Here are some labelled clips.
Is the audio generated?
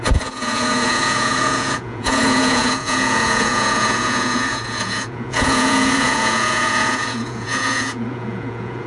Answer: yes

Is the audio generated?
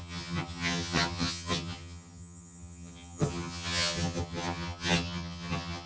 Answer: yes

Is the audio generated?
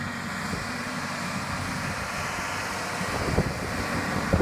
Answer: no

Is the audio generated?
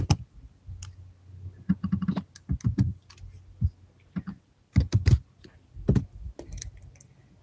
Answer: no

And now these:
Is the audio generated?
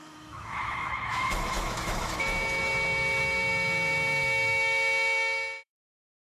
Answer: yes